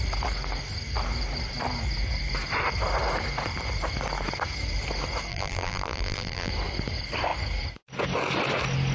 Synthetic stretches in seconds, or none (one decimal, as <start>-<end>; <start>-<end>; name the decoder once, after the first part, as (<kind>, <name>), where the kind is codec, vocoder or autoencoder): 5.3-6.5 (vocoder, BigVGAN v2)